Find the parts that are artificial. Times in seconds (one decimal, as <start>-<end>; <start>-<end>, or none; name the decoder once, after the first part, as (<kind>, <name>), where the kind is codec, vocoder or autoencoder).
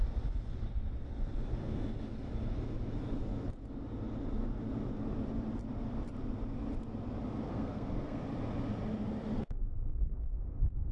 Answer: 7.5-8.2 (codec, SNAC); 9.4-10.3